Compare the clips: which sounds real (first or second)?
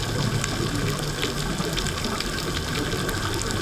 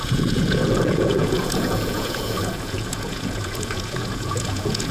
first